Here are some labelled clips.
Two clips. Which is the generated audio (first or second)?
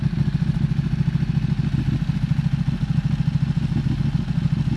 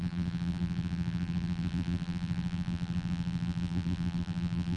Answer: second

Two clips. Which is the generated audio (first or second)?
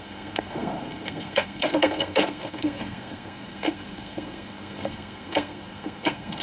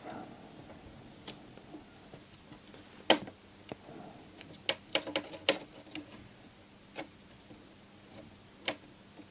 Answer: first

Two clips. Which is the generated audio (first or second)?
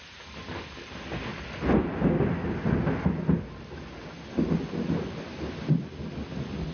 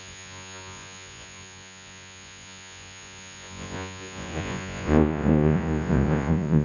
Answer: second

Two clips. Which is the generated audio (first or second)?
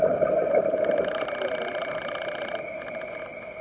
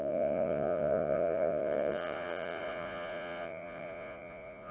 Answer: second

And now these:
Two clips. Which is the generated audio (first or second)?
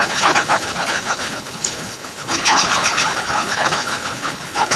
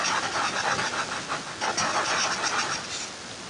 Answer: first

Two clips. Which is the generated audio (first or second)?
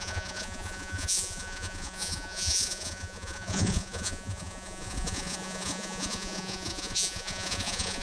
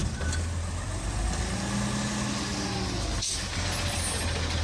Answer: first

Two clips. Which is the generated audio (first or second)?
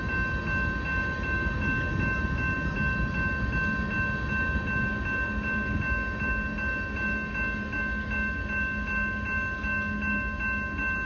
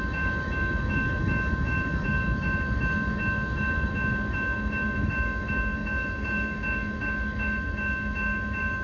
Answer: second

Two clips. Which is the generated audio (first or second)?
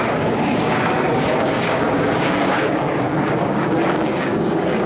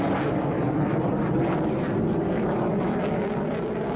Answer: first